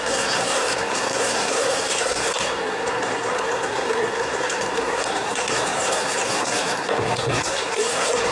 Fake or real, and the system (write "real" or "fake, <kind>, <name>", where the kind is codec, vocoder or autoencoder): fake, codec, SNAC